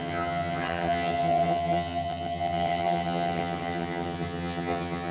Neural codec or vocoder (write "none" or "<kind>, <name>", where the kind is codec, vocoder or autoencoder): vocoder, HiFi-GAN